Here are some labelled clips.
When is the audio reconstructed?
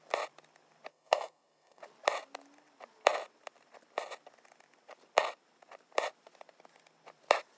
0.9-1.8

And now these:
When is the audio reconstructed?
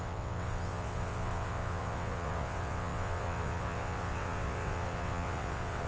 0.0-5.9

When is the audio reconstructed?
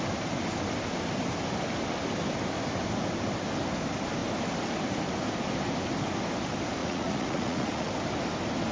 6.8-7.9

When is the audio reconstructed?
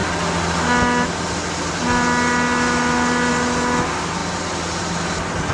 none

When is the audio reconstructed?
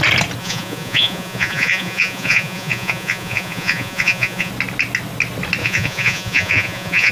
0.4-4.5; 5.6-7.1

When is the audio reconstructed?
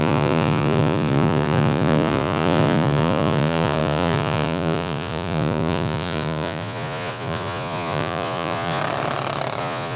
0.0-8.8; 9.6-10.0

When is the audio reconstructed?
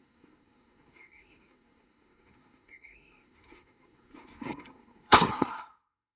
0.0-6.2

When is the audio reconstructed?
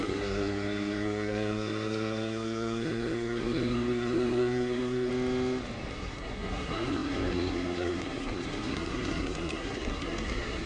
0.0-5.1; 5.9-10.7